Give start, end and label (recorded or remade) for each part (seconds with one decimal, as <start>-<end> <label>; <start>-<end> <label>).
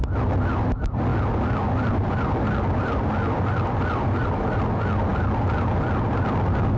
0.0-6.8 recorded